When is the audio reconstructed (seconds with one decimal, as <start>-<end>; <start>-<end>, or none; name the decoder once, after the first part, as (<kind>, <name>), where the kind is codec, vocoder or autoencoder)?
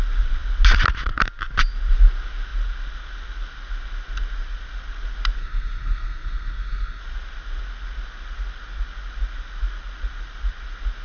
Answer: 5.4-7.0 (codec, SNAC)